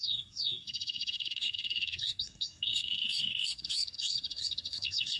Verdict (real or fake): fake